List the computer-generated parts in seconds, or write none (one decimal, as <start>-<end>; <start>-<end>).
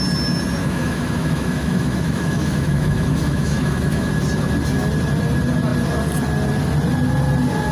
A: 0.6-4.1